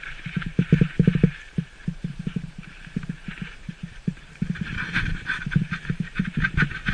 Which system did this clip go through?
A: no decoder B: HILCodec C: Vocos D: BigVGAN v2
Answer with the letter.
D